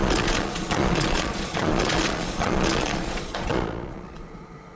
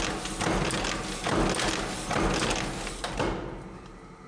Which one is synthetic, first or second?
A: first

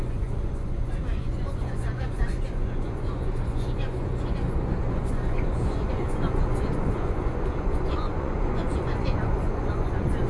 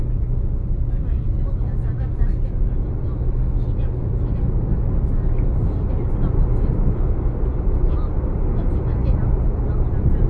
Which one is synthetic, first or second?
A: first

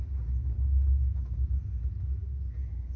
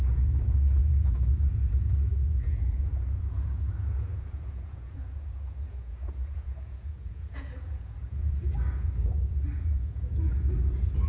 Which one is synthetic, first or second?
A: second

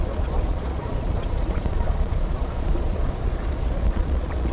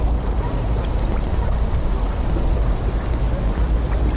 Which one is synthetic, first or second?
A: first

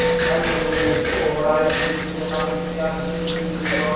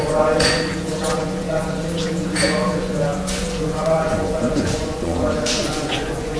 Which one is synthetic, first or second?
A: second